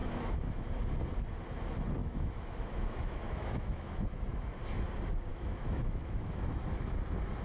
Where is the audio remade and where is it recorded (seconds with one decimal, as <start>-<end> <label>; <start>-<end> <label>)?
0.0-0.6 remade; 0.6-2.0 recorded; 2.0-4.6 remade; 4.6-5.3 recorded; 5.3-6.9 remade; 6.9-7.4 recorded